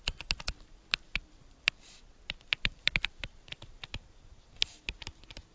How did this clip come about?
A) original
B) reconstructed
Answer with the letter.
B